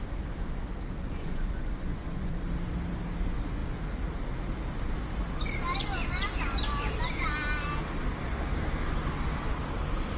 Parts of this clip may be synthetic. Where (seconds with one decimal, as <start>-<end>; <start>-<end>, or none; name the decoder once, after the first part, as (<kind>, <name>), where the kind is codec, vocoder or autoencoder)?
1.2-2.4 (vocoder, Vocos)